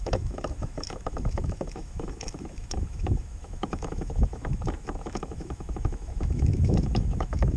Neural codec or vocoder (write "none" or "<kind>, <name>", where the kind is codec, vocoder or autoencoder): autoencoder, DAC-VAE